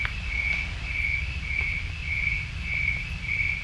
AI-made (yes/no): no